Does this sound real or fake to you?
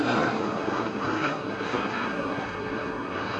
fake